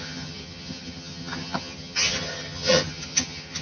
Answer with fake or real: fake